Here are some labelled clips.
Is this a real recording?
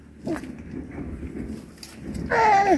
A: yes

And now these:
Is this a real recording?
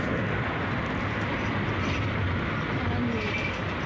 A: yes